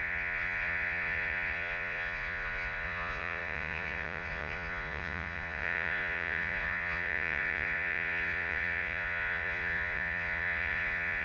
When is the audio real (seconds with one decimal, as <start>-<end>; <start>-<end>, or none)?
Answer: none